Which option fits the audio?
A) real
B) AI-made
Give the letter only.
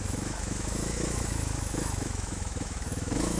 B